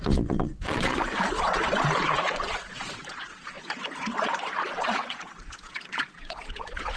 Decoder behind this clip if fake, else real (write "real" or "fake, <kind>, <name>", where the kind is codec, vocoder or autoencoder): fake, vocoder, Vocos